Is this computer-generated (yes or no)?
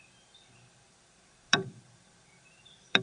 yes